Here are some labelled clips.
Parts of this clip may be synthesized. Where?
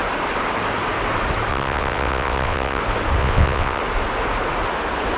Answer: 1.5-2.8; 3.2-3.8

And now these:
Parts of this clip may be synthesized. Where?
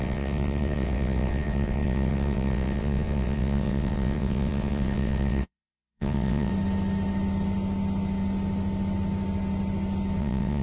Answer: 0.0-6.5; 10.2-10.6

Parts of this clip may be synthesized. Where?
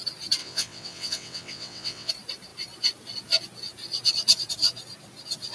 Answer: 0.4-2.1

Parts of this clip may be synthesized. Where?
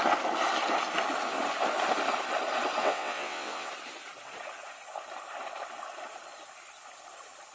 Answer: 2.8-3.7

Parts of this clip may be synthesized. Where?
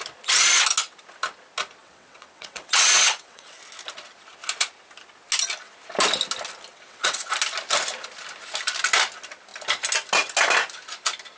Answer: 1.8-3.6; 6.7-7.3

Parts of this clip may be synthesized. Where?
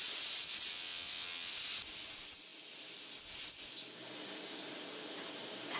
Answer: 0.7-1.5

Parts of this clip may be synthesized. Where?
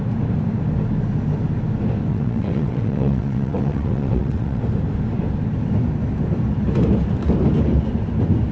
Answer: 2.1-4.6